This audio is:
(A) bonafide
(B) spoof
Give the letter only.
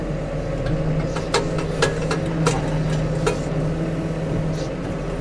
A